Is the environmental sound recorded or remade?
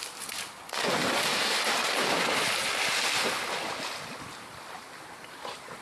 recorded